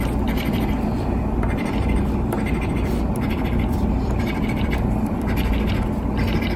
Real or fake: fake